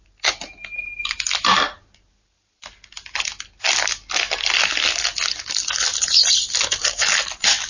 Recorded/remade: recorded